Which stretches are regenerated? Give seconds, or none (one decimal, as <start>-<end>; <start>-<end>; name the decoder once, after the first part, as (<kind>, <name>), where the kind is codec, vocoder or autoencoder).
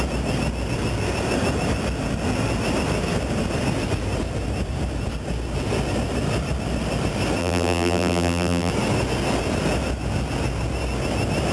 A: 7.4-8.7 (vocoder, BigVGAN v2)